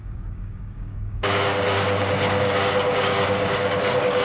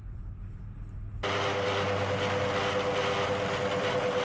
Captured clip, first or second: second